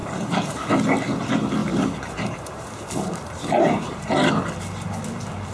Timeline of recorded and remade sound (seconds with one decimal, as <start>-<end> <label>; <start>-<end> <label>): 0.0-0.7 remade; 0.7-1.6 recorded; 1.6-4.3 remade; 4.3-5.5 recorded